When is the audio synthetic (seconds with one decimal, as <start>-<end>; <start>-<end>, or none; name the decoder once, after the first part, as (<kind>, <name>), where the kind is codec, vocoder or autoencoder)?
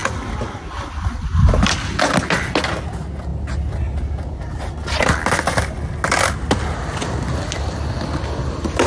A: none